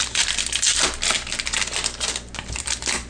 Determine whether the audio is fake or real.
real